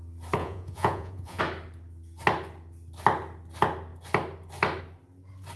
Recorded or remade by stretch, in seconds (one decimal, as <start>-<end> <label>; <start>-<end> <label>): 0.0-0.4 recorded; 0.4-1.4 remade; 1.4-5.6 recorded